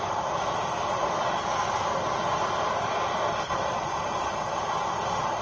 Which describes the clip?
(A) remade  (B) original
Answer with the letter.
B